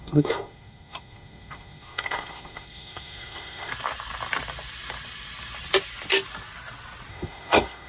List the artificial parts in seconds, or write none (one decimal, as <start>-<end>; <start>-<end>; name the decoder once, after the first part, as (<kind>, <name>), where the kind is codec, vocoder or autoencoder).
0.0-3.7 (codec, SNAC); 7.1-7.9